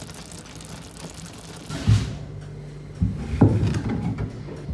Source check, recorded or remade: recorded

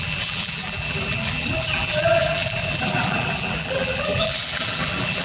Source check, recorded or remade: remade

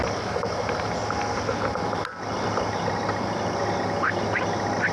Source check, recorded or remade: recorded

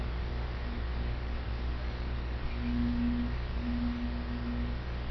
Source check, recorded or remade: remade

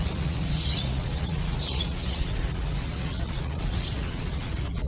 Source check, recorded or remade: remade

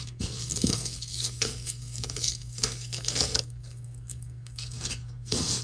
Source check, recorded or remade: remade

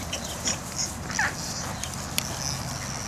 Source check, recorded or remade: recorded